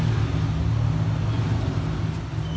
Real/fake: real